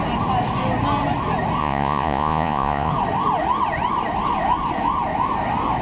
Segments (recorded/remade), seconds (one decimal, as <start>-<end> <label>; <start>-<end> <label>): 0.0-1.6 recorded; 1.6-2.9 remade; 2.9-5.8 recorded